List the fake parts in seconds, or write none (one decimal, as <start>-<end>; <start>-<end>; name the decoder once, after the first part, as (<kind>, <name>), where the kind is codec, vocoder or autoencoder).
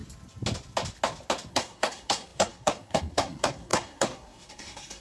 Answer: 1.5-5.0 (codec, SNAC)